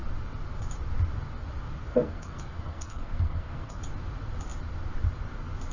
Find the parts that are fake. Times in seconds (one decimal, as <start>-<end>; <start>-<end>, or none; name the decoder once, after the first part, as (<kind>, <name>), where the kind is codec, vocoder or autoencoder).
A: 1.9-3.8 (codec, SNAC)